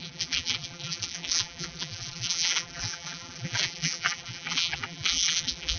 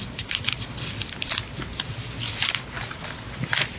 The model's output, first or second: first